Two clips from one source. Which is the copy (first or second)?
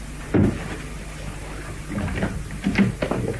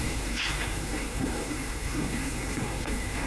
second